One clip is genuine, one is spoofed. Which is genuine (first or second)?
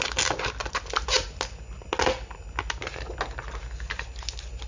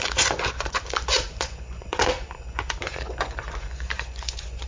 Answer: first